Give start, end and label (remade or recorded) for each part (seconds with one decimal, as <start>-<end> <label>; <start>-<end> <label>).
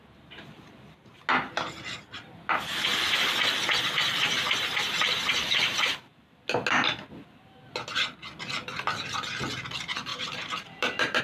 0.0-4.0 recorded; 4.0-6.2 remade; 6.2-10.1 recorded; 10.1-11.2 remade